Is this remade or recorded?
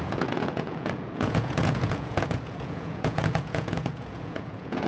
remade